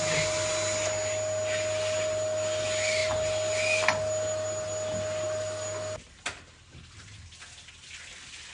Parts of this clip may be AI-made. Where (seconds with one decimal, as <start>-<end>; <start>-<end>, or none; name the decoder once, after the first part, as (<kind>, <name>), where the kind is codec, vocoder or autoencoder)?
none